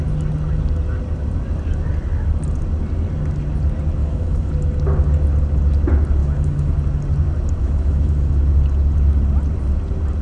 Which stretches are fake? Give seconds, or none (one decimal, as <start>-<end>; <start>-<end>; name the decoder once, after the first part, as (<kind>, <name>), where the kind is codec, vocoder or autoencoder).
4.0-4.5 (autoencoder, DAC-VAE); 6.2-6.7; 7.6-8.3